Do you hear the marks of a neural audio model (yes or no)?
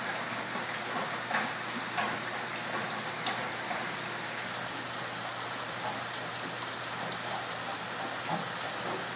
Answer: no